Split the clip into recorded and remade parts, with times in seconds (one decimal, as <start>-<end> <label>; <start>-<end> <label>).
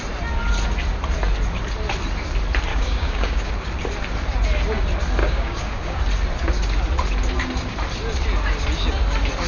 0.0-2.7 recorded; 2.7-3.5 remade; 3.5-5.2 recorded; 5.2-6.0 remade; 6.0-9.5 recorded